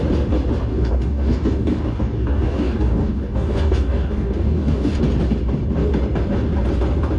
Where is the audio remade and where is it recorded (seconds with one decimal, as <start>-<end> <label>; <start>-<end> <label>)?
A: 0.0-0.7 recorded; 0.7-5.0 remade; 5.0-7.2 recorded